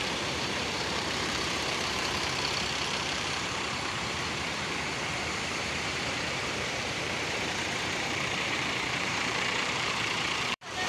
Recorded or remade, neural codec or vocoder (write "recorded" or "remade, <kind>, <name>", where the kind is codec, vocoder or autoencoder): remade, vocoder, BigVGAN v2